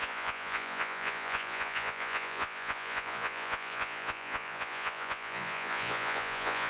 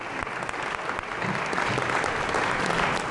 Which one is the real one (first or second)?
second